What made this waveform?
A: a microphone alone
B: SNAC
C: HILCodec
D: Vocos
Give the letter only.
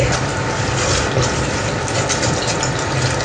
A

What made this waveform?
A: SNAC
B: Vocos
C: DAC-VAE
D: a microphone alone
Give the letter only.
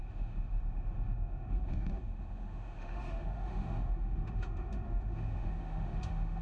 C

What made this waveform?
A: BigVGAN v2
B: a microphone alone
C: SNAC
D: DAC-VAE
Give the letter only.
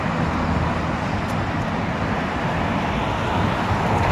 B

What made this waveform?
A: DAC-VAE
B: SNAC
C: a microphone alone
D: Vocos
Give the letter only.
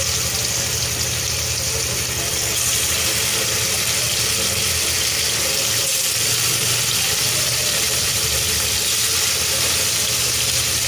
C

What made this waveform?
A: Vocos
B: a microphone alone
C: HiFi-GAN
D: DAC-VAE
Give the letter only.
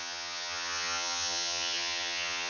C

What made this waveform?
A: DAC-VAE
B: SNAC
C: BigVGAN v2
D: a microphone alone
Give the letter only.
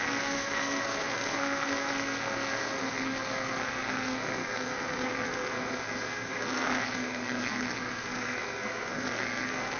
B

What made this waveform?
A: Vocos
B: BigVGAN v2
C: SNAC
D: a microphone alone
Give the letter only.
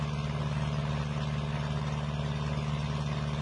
D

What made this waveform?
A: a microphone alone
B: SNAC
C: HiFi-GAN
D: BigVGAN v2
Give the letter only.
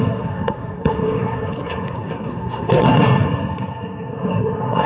B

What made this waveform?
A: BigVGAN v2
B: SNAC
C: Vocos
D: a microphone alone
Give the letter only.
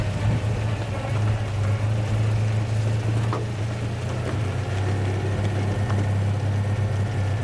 D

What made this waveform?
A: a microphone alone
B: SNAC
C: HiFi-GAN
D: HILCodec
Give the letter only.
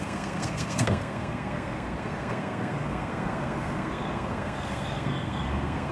B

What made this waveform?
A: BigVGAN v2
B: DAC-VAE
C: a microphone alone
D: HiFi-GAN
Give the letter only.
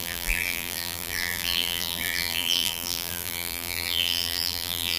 A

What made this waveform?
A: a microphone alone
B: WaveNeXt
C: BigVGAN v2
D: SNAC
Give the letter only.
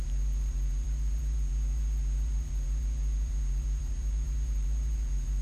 C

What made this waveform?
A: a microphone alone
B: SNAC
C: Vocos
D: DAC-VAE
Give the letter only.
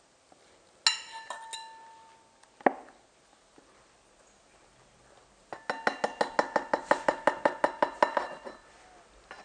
A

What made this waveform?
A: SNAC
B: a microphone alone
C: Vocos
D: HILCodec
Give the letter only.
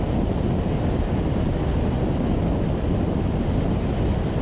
B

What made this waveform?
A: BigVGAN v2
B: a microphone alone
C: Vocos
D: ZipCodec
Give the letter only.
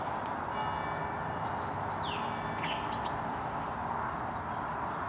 B